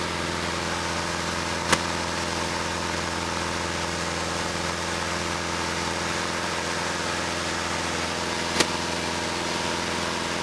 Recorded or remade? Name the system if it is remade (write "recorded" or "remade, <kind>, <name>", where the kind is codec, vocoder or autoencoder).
recorded